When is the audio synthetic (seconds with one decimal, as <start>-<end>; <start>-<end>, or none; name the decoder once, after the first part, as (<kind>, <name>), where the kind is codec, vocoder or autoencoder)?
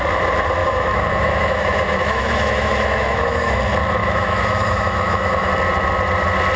0.6-3.6 (autoencoder, DAC-VAE); 4.0-5.5